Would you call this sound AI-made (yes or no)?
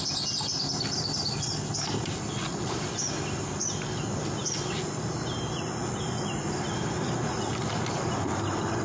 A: no